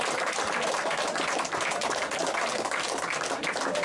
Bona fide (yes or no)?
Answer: yes